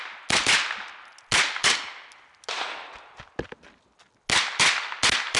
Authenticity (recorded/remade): recorded